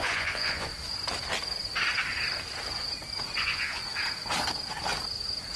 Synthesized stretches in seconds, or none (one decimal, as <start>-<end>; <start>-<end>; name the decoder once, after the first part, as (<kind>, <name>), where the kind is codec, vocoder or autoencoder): 0.0-0.7 (vocoder, Vocos); 3.4-3.8